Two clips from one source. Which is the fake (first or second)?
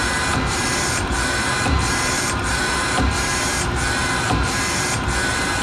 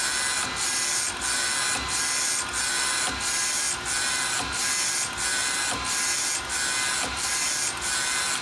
first